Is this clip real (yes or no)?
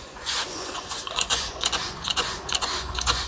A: no